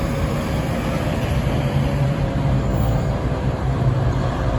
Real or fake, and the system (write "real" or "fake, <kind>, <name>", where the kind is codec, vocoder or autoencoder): fake, vocoder, BigVGAN v2